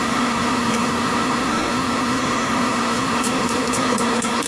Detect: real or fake fake